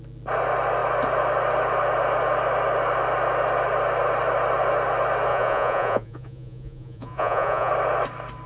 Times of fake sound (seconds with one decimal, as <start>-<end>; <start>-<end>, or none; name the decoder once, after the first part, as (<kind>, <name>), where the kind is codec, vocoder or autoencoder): 5.3-7.7 (vocoder, Vocos)